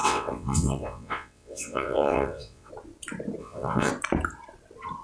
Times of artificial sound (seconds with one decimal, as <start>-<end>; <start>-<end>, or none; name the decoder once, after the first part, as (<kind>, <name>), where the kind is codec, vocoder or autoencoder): 0.0-2.7 (vocoder, WaveNeXt); 3.4-3.9